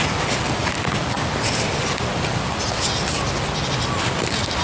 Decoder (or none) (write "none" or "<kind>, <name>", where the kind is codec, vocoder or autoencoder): none